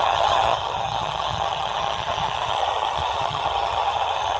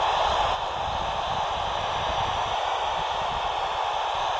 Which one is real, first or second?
second